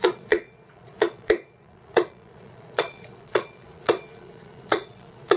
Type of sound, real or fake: fake